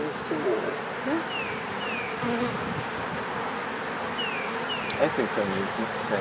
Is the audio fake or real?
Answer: real